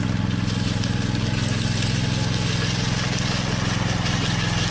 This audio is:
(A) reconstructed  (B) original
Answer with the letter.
B